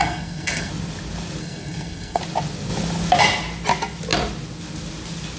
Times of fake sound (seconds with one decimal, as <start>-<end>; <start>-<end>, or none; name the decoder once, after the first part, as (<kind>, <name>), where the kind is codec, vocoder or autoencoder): 0.0-0.7 (codec, SNAC); 1.4-2.2